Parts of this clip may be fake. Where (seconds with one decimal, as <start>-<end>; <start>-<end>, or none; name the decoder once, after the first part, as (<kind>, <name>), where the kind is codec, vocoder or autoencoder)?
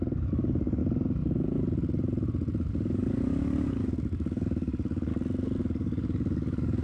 0.0-0.8 (codec, DAC); 2.7-5.1; 5.6-6.8